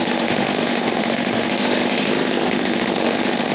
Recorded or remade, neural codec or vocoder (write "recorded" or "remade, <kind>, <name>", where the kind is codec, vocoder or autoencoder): remade, autoencoder, DAC-VAE